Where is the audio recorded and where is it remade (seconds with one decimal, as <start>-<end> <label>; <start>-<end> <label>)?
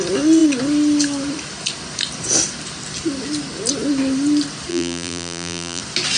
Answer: 0.0-4.7 recorded; 4.7-5.8 remade; 5.8-6.2 recorded